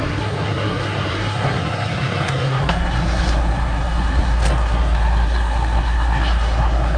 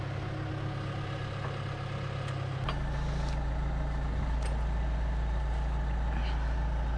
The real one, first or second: second